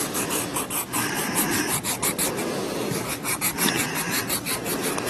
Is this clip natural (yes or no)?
yes